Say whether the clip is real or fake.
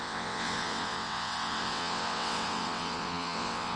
fake